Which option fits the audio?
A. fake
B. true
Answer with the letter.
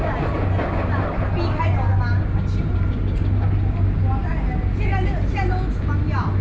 B